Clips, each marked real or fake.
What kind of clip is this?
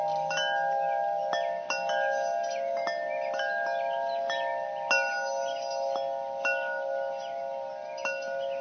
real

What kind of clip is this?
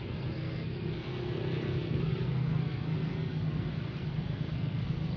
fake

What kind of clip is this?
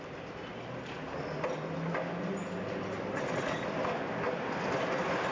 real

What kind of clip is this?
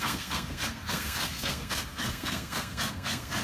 fake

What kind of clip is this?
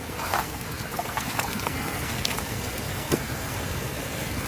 fake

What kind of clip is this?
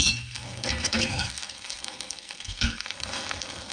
fake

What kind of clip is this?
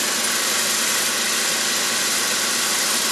real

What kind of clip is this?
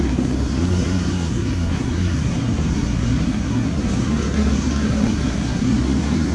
fake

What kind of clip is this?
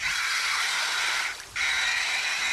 real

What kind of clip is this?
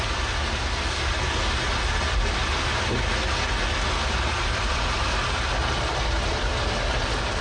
real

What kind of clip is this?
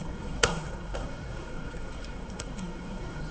fake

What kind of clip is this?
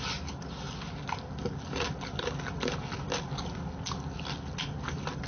real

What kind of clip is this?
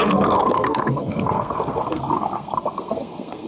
fake